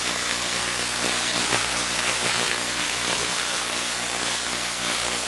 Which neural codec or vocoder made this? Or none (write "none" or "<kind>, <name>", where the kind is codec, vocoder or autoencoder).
codec, SNAC